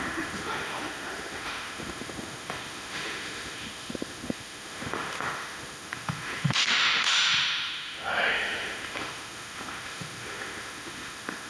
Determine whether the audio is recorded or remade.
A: remade